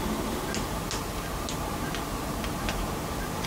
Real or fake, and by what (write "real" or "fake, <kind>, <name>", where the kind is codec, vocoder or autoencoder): real